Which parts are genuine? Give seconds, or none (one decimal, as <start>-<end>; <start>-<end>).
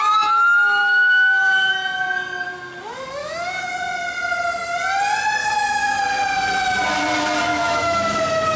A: 0.0-0.8; 1.7-3.2; 3.7-5.4; 6.0-7.5; 8.2-8.6